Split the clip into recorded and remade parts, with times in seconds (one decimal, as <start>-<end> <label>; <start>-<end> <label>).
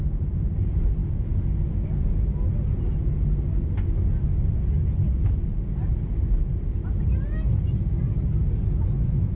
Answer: 0.0-9.4 recorded